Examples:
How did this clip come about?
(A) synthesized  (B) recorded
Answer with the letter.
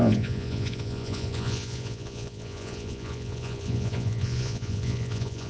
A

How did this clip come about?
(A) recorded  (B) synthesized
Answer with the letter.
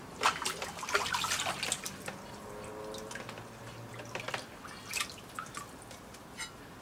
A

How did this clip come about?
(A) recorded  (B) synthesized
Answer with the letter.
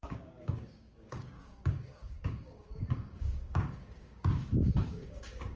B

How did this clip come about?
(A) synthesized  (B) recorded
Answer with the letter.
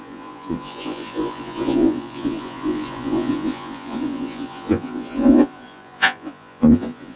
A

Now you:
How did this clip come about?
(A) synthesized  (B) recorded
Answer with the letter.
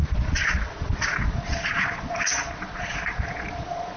A